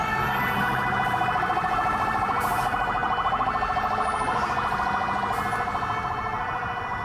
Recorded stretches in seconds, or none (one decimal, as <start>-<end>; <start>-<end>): 3.0-6.1